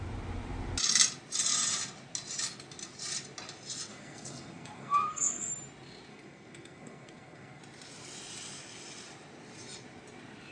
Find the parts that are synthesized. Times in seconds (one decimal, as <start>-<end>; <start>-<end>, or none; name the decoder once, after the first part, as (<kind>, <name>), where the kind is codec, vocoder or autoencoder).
3.9-5.5 (codec, SNAC); 6.1-7.6